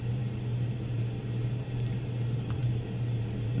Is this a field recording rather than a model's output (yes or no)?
no